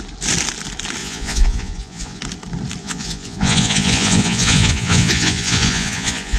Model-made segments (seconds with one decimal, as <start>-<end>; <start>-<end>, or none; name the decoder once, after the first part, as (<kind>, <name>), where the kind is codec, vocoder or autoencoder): 1.0-2.2 (vocoder, Vocos); 2.8-6.4